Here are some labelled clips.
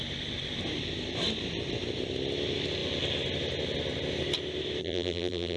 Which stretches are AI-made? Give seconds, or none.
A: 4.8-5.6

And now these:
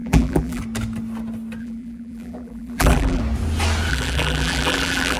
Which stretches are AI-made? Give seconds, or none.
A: 0.0-0.6; 1.6-3.2; 3.9-5.2

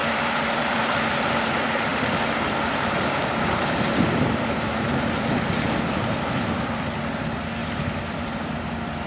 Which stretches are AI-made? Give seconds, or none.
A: 0.0-1.0; 1.9-6.1; 7.6-9.1